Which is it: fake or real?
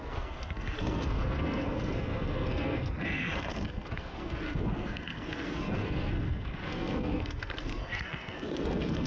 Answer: fake